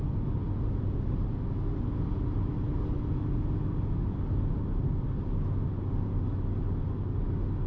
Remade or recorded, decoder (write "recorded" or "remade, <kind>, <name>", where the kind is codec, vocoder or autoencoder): recorded